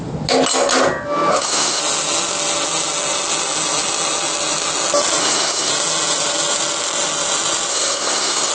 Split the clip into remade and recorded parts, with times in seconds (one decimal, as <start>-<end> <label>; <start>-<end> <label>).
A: 0.0-1.3 recorded; 1.3-1.8 remade; 1.8-5.2 recorded; 5.2-5.7 remade; 5.7-7.7 recorded; 7.7-8.5 remade